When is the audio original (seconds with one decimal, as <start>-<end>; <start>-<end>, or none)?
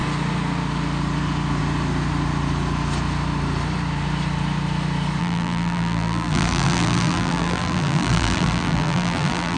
0.0-5.2